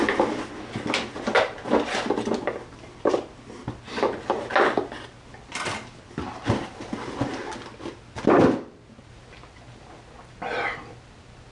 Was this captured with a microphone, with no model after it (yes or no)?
yes